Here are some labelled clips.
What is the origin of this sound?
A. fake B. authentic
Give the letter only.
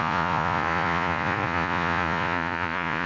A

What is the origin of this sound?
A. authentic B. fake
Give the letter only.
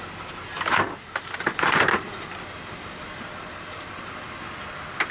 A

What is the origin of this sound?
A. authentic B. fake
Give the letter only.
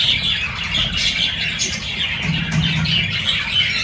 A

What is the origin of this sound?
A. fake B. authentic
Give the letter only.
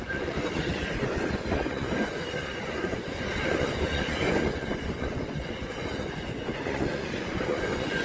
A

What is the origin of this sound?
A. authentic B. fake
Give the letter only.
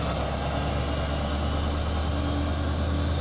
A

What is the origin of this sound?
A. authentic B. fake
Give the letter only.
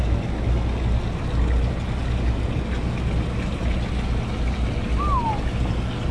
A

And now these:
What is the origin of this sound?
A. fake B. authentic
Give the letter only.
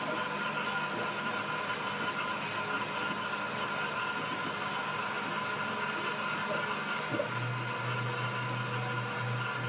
B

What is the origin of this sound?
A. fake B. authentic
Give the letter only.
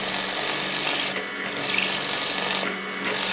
B